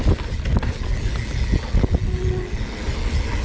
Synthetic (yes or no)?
no